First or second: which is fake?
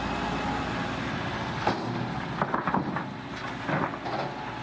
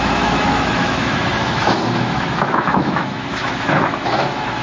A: second